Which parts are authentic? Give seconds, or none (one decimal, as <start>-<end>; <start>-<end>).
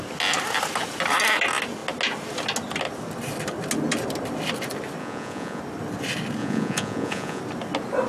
0.0-5.0; 5.6-6.4; 7.4-8.1